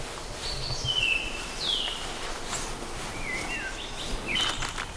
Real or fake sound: real